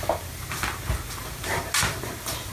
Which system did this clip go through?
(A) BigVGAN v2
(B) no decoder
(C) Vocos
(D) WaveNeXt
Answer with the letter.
B